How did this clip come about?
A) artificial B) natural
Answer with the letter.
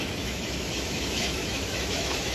A